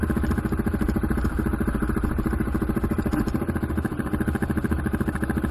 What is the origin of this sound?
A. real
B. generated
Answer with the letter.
A